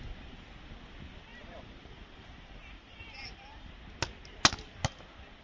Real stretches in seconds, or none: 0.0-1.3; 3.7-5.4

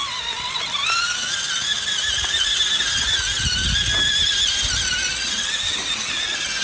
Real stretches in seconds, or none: 0.0-6.6

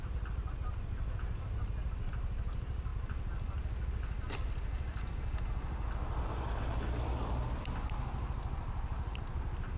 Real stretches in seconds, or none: 0.0-9.8

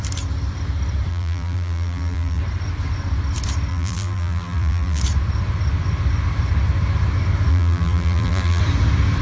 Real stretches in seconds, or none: 0.0-1.1; 2.4-3.7; 5.0-7.5; 8.6-9.2

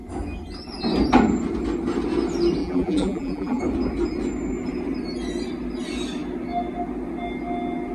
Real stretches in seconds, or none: 0.0-2.6; 3.6-7.9